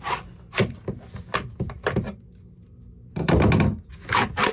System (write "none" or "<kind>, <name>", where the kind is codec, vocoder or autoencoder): none